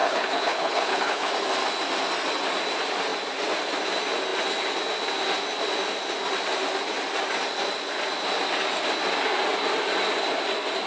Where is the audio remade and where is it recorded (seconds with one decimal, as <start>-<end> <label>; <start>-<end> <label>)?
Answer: 0.0-1.3 remade; 1.3-10.9 recorded